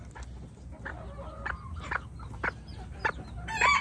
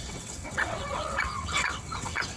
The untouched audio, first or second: first